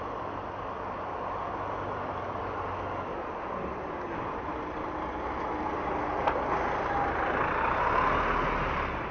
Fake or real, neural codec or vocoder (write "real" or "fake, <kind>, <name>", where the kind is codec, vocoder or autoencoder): real